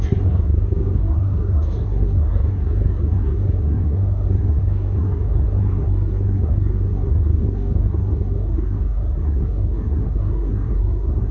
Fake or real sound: fake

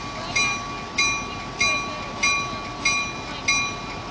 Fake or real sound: real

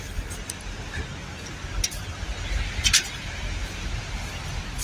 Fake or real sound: real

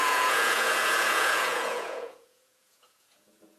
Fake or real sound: fake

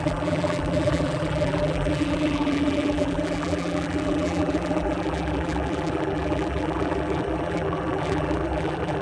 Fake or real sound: fake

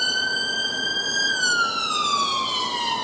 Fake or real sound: real